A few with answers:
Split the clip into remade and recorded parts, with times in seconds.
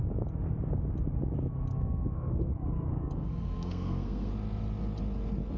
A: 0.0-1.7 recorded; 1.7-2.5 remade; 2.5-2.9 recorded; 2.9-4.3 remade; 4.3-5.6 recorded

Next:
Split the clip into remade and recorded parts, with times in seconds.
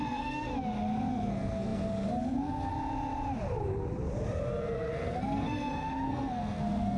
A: 0.0-0.5 remade; 0.5-1.1 recorded; 1.1-2.7 remade; 2.7-4.9 recorded; 4.9-7.0 remade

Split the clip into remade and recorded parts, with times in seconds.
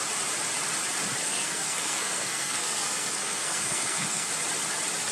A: 0.0-1.2 recorded; 1.2-4.3 remade; 4.3-5.1 recorded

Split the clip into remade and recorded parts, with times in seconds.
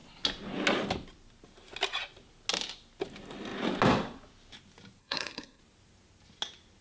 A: 0.0-5.0 recorded; 5.0-5.6 remade; 5.6-6.8 recorded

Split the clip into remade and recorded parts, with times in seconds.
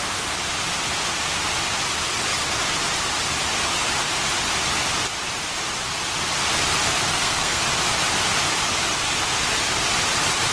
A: 0.0-7.1 recorded; 7.1-7.6 remade; 7.6-10.5 recorded